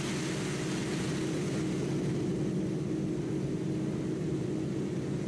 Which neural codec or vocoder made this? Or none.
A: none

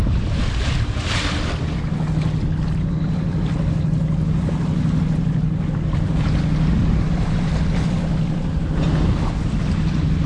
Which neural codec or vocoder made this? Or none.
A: none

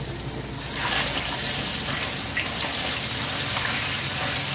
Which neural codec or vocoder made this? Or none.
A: none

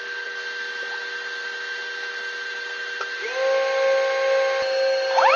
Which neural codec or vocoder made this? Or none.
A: none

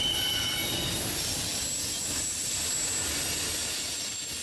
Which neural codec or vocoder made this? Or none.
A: none